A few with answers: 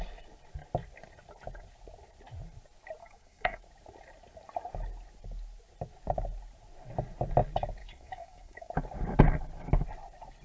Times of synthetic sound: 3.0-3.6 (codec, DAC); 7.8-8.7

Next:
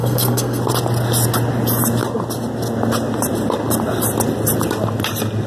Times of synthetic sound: 0.0-0.6 (codec, SNAC)

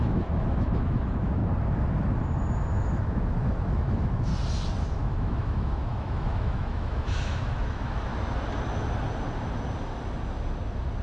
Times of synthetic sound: 0.0-1.4 (autoencoder, DAC-VAE); 2.8-4.3; 4.9-8.1

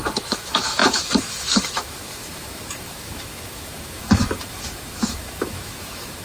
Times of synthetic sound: 0.0-6.2 (autoencoder, DAC-VAE)

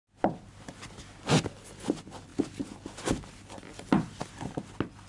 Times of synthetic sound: none

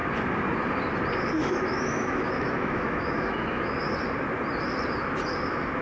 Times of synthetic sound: 1.4-3.8 (autoencoder, DAC-VAE)